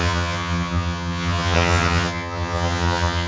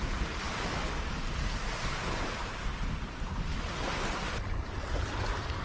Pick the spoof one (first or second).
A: first